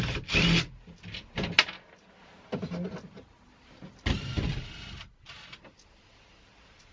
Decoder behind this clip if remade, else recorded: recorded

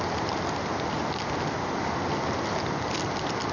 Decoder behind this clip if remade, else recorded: recorded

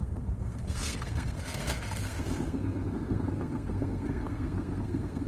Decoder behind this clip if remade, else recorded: remade, codec, SNAC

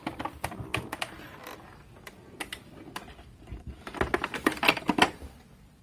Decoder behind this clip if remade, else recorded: remade, vocoder, BigVGAN v2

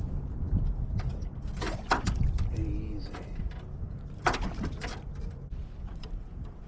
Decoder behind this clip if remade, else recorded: recorded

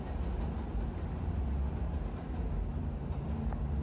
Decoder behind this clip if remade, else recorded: recorded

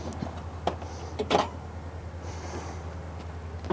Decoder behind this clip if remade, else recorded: recorded